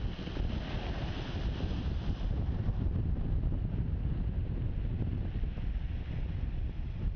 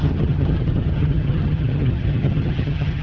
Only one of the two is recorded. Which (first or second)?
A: first